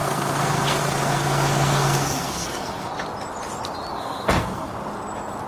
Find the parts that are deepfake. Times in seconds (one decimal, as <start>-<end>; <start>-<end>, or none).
0.0-2.9; 3.9-4.7